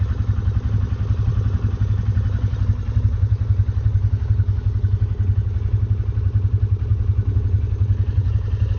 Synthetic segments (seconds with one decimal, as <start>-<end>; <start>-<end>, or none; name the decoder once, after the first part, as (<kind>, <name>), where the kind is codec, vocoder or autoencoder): none